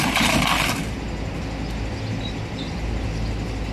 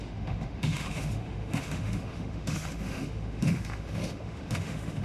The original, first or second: first